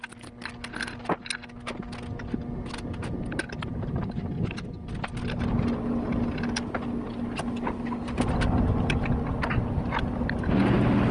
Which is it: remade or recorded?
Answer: recorded